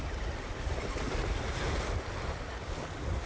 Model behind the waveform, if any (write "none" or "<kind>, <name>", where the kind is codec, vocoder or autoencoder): none